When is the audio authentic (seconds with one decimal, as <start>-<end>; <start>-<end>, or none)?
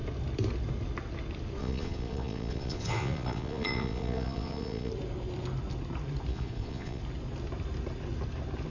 0.0-1.6; 4.9-6.3; 7.0-8.7